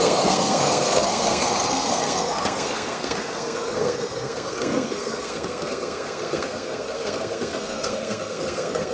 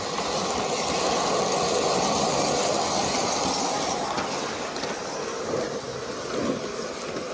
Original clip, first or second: second